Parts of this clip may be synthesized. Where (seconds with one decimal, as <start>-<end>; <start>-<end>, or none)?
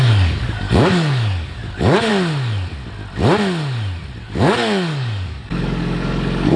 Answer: 0.0-2.1; 4.2-6.6